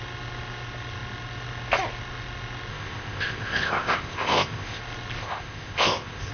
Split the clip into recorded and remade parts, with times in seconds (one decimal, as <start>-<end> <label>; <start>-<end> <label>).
0.0-2.7 recorded; 2.7-4.8 remade; 4.8-5.2 recorded; 5.2-6.3 remade